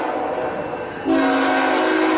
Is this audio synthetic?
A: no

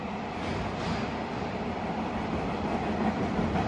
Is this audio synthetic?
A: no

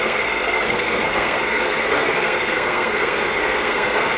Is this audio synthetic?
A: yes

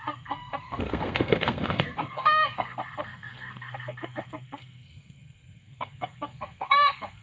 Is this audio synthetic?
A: yes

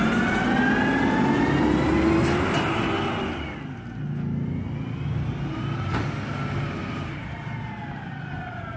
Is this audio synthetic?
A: no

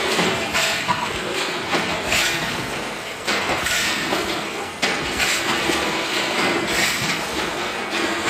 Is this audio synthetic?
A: yes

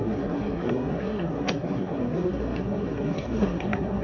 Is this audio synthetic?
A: yes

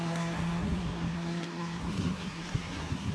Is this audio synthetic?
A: yes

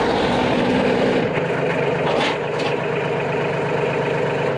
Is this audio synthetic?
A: no